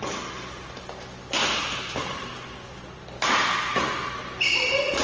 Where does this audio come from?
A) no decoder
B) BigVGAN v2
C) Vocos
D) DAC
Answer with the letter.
A